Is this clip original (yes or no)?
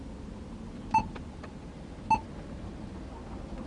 yes